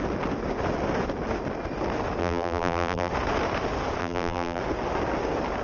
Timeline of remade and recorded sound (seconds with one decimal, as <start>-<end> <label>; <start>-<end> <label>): 0.0-2.2 recorded; 2.2-3.1 remade; 3.1-4.0 recorded; 4.0-4.6 remade; 4.6-5.6 recorded